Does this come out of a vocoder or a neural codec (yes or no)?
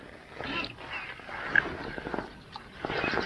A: no